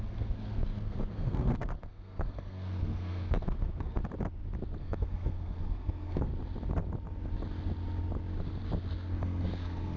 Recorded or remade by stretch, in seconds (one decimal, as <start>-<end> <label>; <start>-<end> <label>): 0.0-4.0 remade; 4.0-4.8 recorded; 4.8-6.3 remade; 6.3-9.1 recorded; 9.1-10.0 remade